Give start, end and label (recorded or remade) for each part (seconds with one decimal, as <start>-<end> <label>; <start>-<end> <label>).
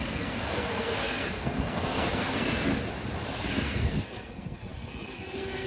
0.0-2.7 remade; 2.7-3.5 recorded; 3.5-5.7 remade